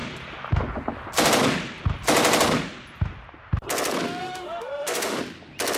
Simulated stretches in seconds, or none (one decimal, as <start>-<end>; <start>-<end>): 4.2-5.2